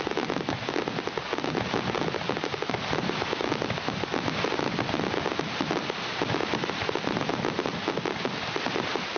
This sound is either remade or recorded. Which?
recorded